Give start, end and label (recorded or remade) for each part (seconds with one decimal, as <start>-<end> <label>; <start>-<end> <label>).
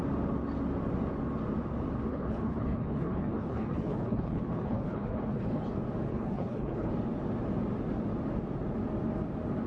0.0-2.1 recorded; 2.1-5.6 remade; 5.6-6.1 recorded; 6.1-6.9 remade; 6.9-9.7 recorded